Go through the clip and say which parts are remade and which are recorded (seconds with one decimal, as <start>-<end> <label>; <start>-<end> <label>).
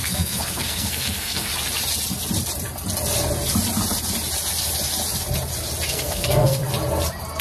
0.0-1.5 remade; 1.5-5.9 recorded; 5.9-6.6 remade; 6.6-7.4 recorded